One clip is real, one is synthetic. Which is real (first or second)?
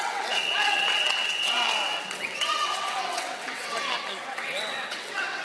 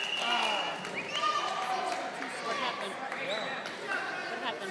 second